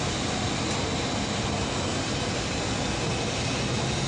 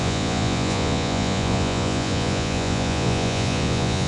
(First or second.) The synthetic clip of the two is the second